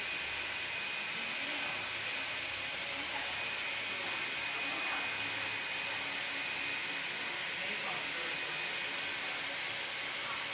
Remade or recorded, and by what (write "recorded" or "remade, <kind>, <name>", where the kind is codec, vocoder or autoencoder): recorded